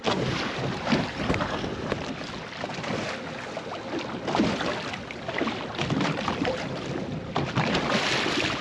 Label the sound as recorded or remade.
recorded